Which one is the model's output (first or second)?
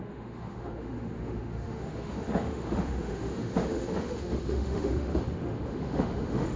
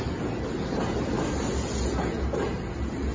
first